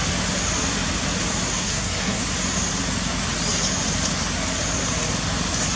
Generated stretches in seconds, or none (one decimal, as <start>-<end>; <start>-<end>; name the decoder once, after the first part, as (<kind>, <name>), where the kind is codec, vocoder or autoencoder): 1.6-2.2 (codec, SNAC)